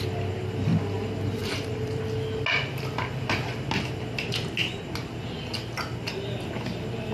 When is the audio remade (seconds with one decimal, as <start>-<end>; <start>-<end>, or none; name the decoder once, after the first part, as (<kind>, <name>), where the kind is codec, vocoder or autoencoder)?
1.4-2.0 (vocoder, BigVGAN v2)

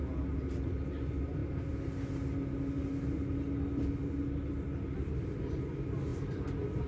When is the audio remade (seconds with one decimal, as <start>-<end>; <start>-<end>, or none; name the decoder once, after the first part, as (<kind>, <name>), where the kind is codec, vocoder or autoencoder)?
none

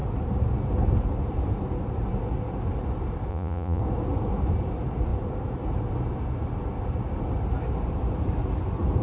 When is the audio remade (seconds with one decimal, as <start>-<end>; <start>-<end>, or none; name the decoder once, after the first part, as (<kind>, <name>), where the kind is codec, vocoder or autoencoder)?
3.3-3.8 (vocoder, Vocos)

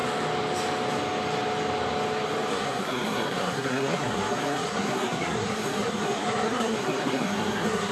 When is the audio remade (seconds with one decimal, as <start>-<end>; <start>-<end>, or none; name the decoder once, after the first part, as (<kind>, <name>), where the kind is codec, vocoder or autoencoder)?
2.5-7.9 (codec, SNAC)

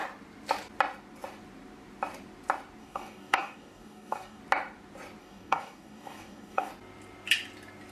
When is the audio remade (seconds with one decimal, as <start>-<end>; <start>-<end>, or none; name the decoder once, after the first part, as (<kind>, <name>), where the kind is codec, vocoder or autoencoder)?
2.8-4.4 (codec, DAC); 5.2-6.7

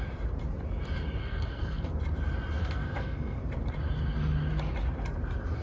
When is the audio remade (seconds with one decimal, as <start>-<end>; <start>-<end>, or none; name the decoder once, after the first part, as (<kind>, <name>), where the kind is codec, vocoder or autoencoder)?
1.2-1.9 (codec, SNAC); 2.6-3.4

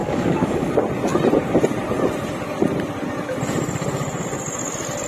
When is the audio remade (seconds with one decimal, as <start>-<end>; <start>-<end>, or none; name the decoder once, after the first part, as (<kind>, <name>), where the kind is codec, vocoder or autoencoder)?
0.0-0.7 (codec, DAC)